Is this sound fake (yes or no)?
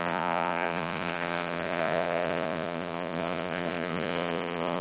yes